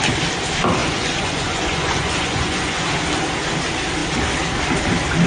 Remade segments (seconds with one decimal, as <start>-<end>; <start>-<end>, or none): 0.8-2.8